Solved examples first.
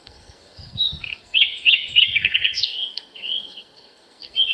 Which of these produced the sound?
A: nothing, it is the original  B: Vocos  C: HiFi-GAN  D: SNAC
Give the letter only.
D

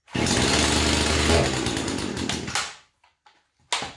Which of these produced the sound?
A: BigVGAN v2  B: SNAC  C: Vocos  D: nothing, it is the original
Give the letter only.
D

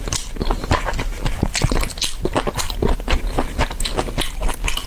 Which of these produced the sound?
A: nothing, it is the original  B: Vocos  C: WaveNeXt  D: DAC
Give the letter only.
A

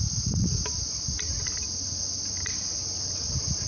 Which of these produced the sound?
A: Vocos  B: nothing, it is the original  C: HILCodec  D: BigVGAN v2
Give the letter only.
B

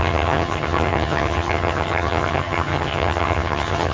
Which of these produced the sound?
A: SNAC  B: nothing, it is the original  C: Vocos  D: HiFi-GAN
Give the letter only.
D